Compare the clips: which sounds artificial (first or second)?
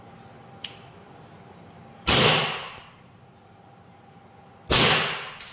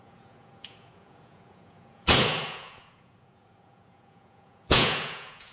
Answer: second